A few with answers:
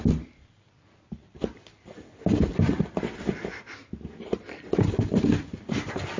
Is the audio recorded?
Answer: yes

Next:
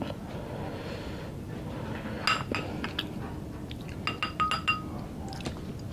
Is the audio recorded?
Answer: yes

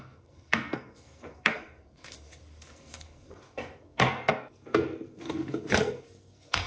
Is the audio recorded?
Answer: no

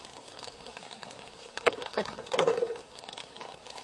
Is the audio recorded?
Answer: no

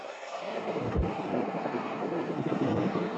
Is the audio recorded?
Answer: no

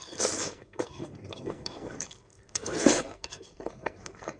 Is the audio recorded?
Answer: no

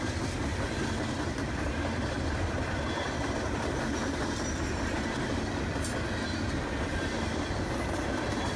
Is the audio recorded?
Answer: yes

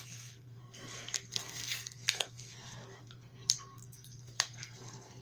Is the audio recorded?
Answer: no